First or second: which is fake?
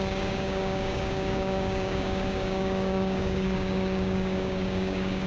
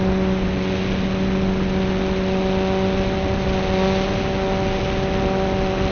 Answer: first